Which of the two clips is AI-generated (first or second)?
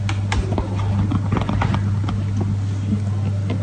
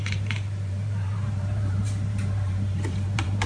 second